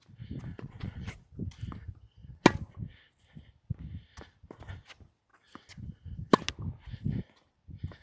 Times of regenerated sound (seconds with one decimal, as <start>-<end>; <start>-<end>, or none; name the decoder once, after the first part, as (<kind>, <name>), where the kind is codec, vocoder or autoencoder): 0.5-1.3 (vocoder, Vocos)